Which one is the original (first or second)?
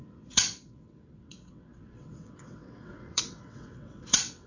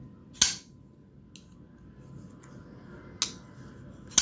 second